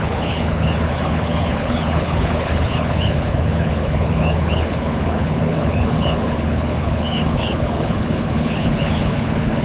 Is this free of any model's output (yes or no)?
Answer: no